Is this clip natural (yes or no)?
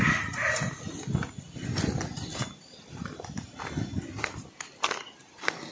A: yes